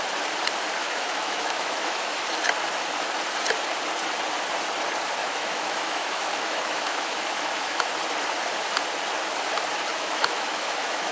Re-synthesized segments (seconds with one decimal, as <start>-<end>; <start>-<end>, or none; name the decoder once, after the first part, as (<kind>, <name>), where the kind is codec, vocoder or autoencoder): 0.8-2.2 (autoencoder, DAC-VAE); 5.2-7.9; 9.9-11.1